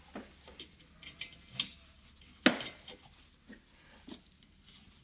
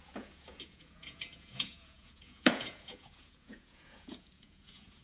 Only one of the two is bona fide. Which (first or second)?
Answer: first